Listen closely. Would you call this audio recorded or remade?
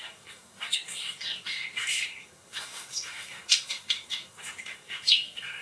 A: remade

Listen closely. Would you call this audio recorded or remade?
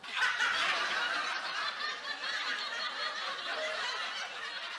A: remade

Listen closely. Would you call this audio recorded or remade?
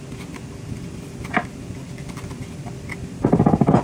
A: recorded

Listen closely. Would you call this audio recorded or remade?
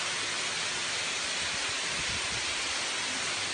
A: recorded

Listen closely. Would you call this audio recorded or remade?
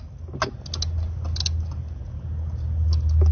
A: recorded